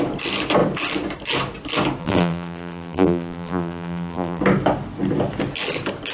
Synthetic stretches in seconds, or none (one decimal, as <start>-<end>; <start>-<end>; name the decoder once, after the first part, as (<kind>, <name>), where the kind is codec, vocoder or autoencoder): 2.0-4.4 (vocoder, BigVGAN v2)